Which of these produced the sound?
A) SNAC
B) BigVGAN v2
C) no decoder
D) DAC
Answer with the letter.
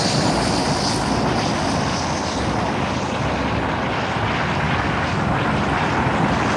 C